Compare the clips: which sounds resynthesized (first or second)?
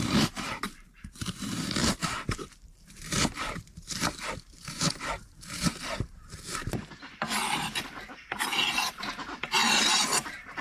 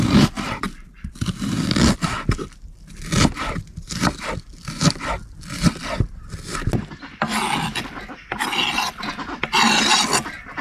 first